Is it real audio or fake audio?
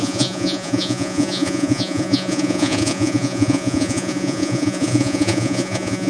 fake